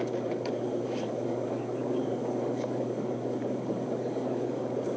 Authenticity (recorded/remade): remade